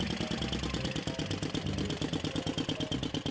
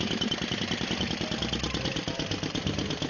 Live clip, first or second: first